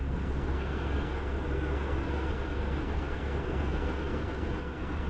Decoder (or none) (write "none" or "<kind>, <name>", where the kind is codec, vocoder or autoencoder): codec, SNAC